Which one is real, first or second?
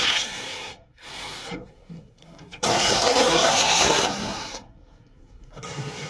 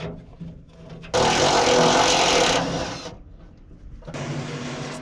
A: second